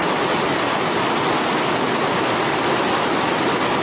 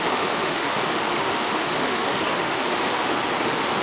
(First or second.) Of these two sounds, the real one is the first